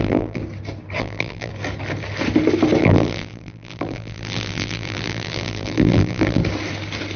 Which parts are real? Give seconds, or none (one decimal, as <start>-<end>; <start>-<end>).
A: 0.4-1.0; 1.5-2.8; 6.4-7.2